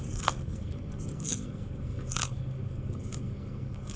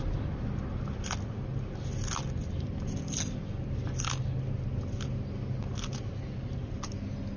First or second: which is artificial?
first